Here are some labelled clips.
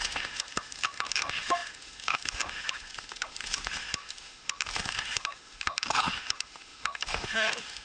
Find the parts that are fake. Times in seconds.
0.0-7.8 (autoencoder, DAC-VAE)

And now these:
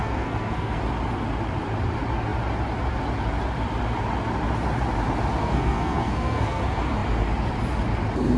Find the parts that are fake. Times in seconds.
0.0-0.8 (codec, SNAC); 5.4-6.6